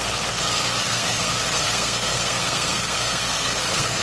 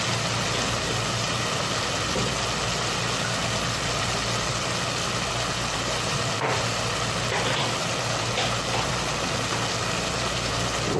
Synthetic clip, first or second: first